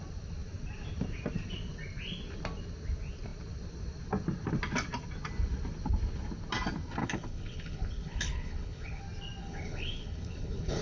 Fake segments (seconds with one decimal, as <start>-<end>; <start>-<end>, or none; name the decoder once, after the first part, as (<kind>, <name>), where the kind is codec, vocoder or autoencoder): 7.0-9.0 (codec, HILCodec); 9.4-10.8